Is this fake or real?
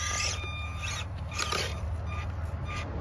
real